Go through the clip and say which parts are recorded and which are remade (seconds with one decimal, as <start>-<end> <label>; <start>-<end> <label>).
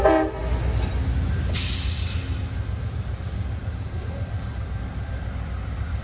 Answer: 0.0-6.0 recorded